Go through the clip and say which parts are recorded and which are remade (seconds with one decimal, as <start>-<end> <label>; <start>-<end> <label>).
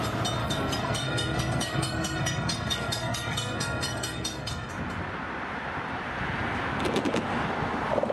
0.0-0.4 recorded; 0.4-4.7 remade; 4.7-8.1 recorded